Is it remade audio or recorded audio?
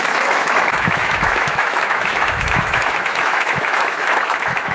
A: remade